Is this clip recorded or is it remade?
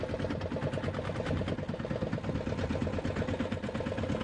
recorded